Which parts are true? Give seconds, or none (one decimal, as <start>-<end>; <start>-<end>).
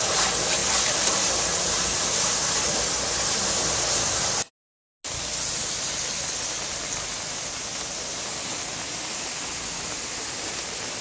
0.0-11.0